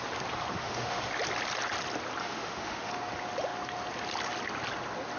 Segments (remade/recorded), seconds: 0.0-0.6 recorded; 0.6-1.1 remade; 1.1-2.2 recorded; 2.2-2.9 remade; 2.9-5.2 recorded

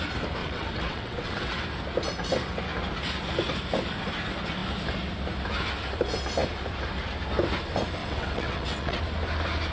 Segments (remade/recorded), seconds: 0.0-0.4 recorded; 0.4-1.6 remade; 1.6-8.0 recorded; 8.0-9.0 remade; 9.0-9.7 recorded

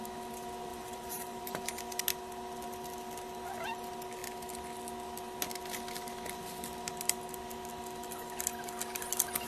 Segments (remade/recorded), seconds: 0.0-0.7 recorded; 0.7-1.7 remade; 1.7-9.5 recorded